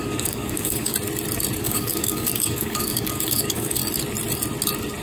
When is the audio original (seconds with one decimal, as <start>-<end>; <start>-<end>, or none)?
0.9-1.6; 3.8-5.0